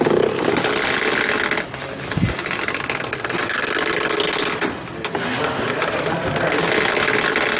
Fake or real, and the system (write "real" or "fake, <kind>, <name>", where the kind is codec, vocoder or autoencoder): real